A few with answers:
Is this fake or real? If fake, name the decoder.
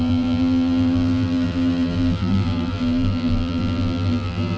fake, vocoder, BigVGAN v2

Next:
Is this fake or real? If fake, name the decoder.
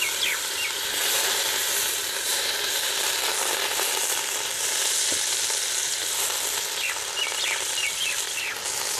real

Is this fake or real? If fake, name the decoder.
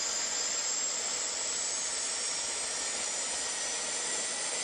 real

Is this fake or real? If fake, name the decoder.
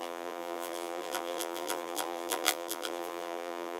fake, vocoder, BigVGAN v2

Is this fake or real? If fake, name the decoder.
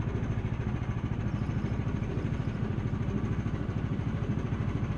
fake, vocoder, BigVGAN v2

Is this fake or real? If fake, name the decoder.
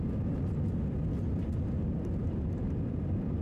real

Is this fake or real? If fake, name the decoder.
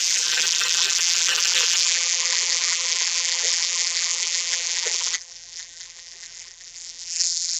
fake, vocoder, BigVGAN v2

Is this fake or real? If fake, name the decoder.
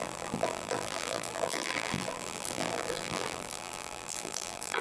fake, vocoder, BigVGAN v2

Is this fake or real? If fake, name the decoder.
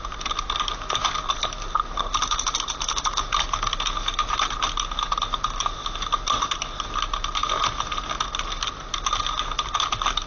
real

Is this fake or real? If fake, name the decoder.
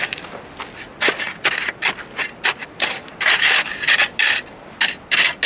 real